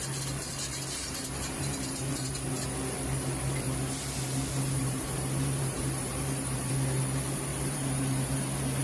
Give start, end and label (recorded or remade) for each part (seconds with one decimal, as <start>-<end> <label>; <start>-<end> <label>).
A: 0.0-1.0 recorded; 1.0-2.5 remade; 2.5-4.8 recorded; 4.8-6.7 remade; 6.7-7.5 recorded; 7.5-8.3 remade; 8.3-8.8 recorded